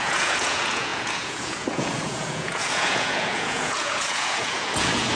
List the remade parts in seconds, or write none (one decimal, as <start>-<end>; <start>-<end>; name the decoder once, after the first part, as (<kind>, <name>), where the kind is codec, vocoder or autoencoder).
0.0-5.2 (vocoder, Vocos)